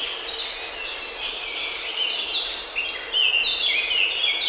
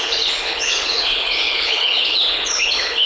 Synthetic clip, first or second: second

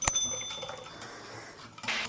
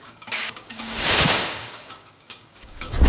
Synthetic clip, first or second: second